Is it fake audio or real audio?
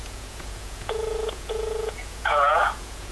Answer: fake